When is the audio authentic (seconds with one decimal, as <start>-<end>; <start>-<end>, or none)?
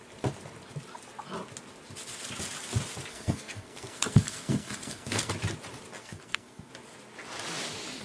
0.0-3.1; 5.3-6.0; 6.7-8.0